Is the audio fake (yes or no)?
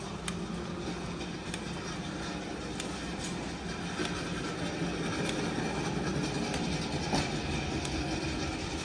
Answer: no